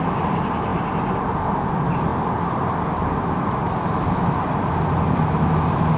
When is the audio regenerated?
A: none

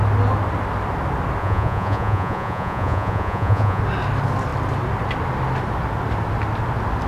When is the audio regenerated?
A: 1.4-3.8

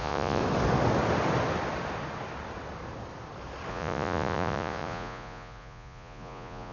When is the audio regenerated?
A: 0.0-0.4; 3.7-6.7

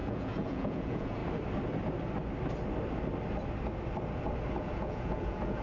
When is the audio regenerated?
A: 0.0-1.2; 4.6-5.6

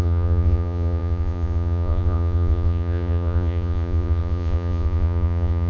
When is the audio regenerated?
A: 0.0-5.7

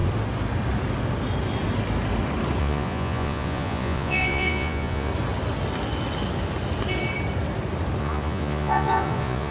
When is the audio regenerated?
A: 2.6-5.1; 8.0-9.5

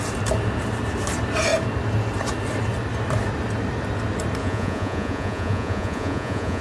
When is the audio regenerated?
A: 4.4-6.6